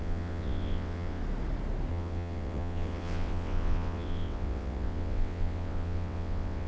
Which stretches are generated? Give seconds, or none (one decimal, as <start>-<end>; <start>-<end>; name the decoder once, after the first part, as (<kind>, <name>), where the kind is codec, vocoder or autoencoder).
0.0-1.2 (vocoder, WaveNeXt); 1.9-6.7

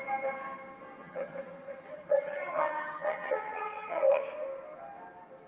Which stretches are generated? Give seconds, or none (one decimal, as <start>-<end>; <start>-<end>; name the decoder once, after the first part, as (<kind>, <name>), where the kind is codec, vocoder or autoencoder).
1.0-4.2 (vocoder, HiFi-GAN)

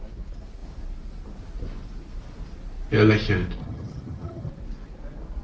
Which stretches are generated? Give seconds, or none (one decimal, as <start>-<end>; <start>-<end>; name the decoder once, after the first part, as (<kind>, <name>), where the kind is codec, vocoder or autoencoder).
3.6-4.5 (vocoder, HiFi-GAN)